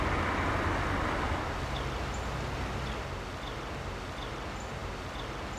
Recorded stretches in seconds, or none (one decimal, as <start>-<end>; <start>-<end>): 0.0-5.6